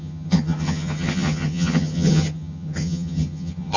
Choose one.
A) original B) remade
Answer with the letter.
B